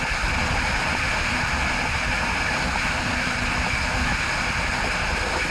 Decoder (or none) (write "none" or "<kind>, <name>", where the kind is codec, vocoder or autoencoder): none